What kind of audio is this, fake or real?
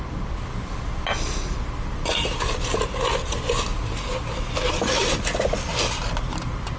real